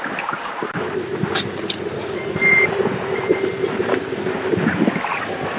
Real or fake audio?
fake